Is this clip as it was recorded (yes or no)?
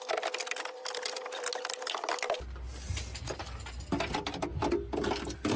yes